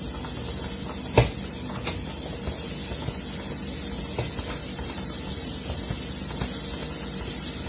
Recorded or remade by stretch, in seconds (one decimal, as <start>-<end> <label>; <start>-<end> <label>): 0.0-4.6 recorded; 4.6-5.8 remade; 5.8-7.7 recorded